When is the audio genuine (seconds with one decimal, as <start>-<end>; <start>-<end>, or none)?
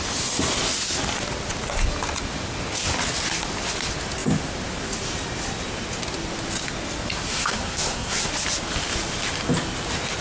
0.0-7.3; 8.3-10.2